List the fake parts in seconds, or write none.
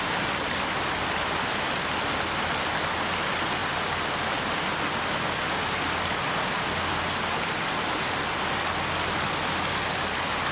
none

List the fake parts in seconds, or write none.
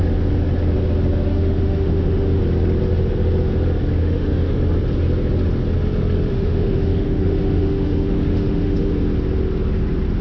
1.3-2.4 (autoencoder, DAC-VAE); 4.0-4.6; 6.3-8.9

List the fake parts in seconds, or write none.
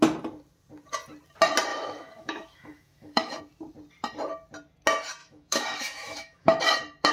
1.7-3.4 (autoencoder, DAC-VAE); 5.2-6.6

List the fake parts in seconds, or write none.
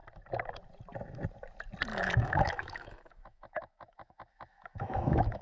1.9-5.4 (autoencoder, DAC-VAE)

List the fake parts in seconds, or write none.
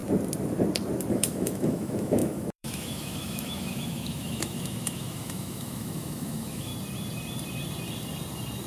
1.1-6.7 (autoencoder, DAC-VAE)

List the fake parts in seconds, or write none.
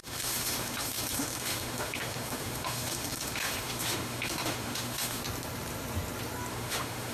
0.0-5.2 (autoencoder, DAC-VAE); 6.5-7.1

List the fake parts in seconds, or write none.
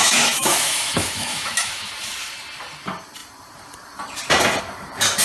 0.0-1.9 (autoencoder, DAC-VAE)